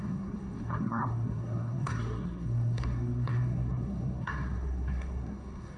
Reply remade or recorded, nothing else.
remade